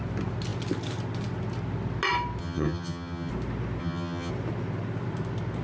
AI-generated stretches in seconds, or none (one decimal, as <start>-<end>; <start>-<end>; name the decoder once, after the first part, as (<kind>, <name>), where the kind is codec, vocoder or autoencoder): 2.4-3.3 (vocoder, HiFi-GAN); 3.8-4.3